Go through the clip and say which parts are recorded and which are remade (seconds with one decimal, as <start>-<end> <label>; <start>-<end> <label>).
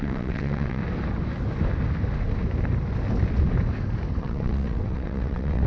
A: 0.0-0.8 remade; 0.8-4.2 recorded; 4.2-5.7 remade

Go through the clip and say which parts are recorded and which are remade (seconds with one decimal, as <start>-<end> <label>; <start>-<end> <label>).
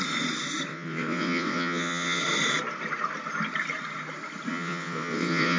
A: 0.0-0.7 recorded; 0.7-2.2 remade; 2.2-4.5 recorded; 4.5-5.6 remade